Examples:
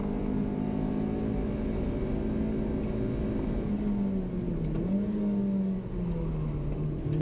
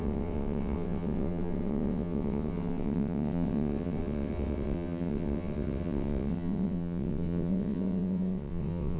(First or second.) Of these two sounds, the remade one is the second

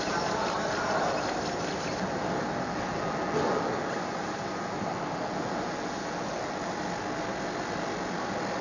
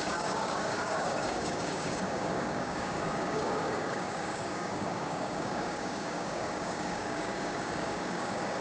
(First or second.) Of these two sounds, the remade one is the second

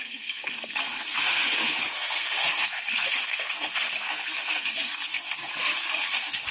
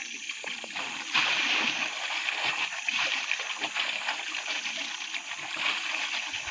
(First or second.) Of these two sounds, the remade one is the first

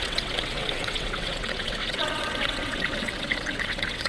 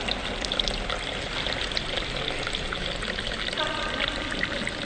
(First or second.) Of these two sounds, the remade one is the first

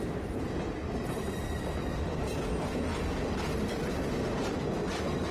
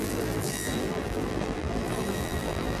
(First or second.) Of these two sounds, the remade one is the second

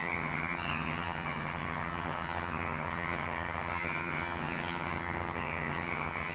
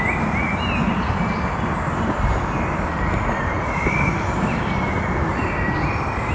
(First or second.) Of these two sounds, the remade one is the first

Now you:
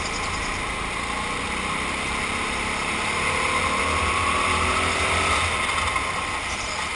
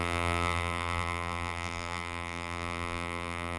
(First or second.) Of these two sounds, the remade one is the second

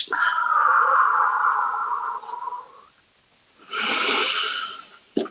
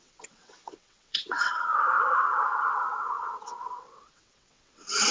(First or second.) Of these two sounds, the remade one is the second